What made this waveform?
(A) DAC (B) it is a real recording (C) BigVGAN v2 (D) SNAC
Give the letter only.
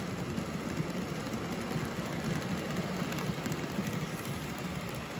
B